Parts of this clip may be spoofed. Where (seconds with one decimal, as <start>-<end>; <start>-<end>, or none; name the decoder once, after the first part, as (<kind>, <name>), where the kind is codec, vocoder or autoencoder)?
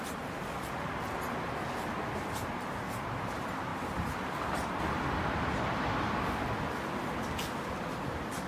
3.7-4.7 (vocoder, BigVGAN v2)